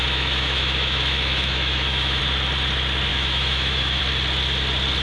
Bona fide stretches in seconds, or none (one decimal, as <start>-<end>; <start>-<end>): 2.2-3.1; 4.0-5.0